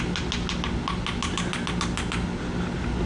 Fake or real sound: real